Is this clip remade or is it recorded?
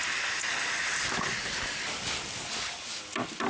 recorded